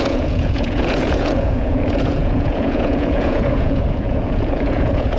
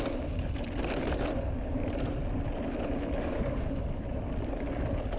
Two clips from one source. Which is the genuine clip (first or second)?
second